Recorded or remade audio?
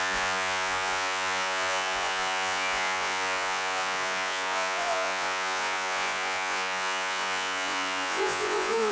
remade